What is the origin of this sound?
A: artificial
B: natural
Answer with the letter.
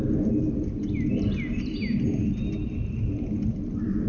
B